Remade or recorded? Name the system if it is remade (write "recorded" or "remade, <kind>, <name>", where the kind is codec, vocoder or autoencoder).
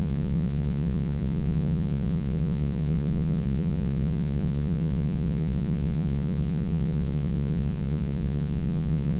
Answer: remade, vocoder, Vocos